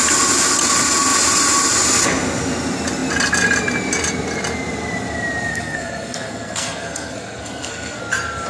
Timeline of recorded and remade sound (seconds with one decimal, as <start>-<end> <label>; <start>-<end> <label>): 0.0-5.5 recorded; 5.5-8.0 remade; 8.0-8.5 recorded